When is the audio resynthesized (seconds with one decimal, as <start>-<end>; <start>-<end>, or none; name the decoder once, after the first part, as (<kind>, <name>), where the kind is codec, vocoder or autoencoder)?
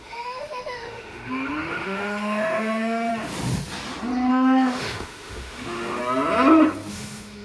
0.0-3.1 (autoencoder, DAC-VAE); 4.3-6.0; 6.9-7.4